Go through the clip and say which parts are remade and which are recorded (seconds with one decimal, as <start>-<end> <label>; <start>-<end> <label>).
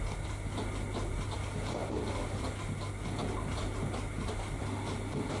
0.0-5.4 recorded